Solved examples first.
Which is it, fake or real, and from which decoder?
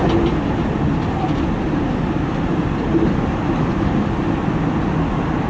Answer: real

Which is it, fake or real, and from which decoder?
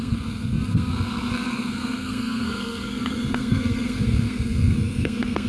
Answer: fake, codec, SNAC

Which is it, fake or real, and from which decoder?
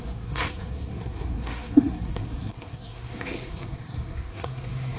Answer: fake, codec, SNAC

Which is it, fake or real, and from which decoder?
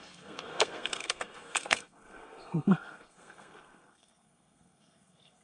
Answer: fake, codec, SNAC